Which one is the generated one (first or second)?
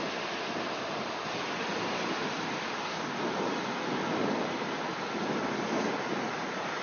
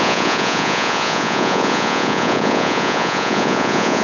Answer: second